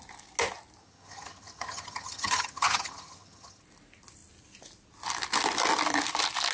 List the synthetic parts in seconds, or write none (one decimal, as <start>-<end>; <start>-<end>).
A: 0.8-3.6